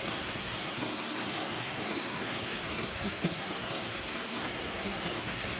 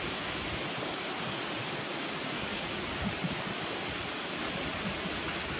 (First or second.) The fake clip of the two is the first